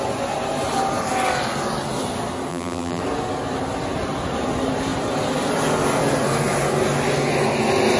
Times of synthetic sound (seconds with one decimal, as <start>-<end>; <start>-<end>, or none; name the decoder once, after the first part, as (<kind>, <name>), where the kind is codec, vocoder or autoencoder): 2.5-3.0 (vocoder, BigVGAN v2)